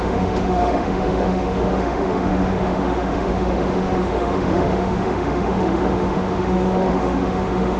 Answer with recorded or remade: remade